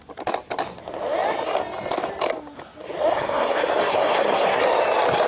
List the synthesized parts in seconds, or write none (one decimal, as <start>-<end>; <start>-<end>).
3.1-4.6